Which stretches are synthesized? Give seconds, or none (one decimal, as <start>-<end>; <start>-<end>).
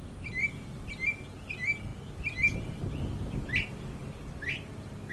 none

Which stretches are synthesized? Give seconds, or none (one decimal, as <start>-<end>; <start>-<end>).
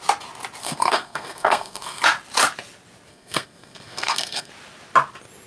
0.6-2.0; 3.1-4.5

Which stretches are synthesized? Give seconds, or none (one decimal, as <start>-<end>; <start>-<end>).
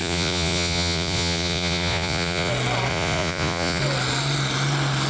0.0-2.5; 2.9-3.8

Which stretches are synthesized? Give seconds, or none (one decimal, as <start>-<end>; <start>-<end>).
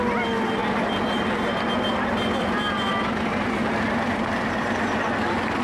0.6-3.7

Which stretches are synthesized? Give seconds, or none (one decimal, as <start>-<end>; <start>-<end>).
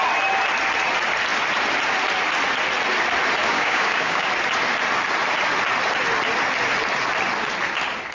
3.4-4.3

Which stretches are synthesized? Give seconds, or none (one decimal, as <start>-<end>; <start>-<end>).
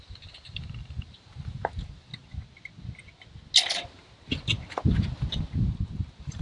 0.0-2.1; 5.9-6.4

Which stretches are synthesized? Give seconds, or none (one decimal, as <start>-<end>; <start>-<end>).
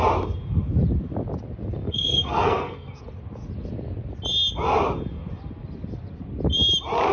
1.7-3.0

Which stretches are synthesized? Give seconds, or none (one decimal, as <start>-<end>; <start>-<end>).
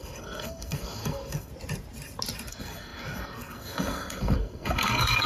0.0-1.5; 2.5-5.3